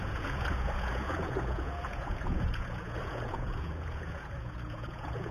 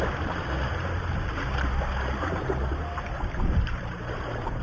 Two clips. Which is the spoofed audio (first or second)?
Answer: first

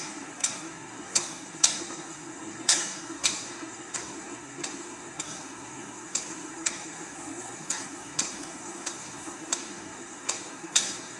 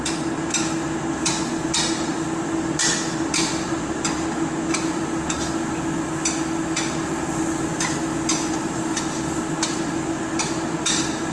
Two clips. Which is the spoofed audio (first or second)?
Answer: first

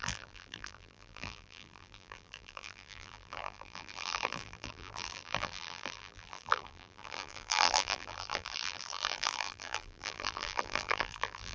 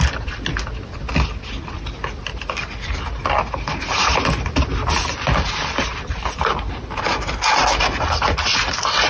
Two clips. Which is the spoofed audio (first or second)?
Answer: first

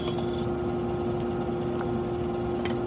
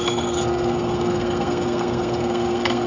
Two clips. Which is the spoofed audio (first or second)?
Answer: second